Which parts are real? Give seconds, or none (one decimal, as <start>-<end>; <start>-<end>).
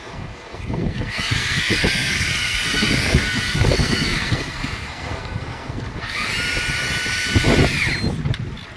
6.3-8.8